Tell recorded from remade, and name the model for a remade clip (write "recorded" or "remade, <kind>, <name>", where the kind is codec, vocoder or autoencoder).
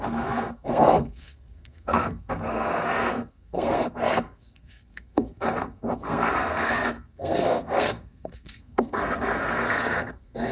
remade, codec, SNAC